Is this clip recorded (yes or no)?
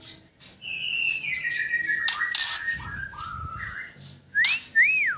yes